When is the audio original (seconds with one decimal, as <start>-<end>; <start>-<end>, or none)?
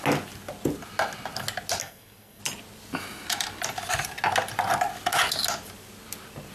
0.0-1.8; 2.4-6.5